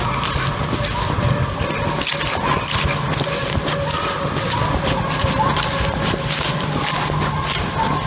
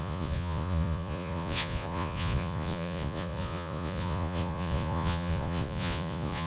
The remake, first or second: second